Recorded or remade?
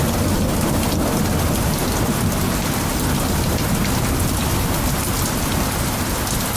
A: recorded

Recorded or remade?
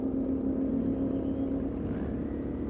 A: recorded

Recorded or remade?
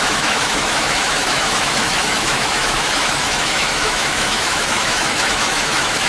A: remade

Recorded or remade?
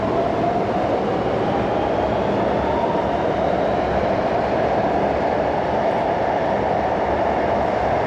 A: recorded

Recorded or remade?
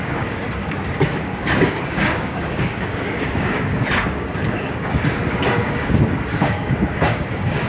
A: remade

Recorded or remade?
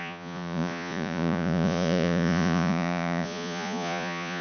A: remade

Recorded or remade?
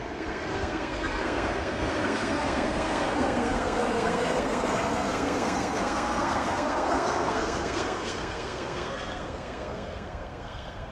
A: remade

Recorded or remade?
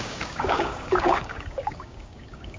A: remade